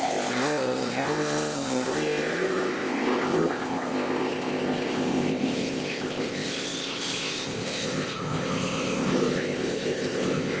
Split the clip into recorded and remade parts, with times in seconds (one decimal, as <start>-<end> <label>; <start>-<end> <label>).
0.0-10.6 remade